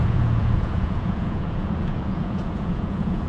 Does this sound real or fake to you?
fake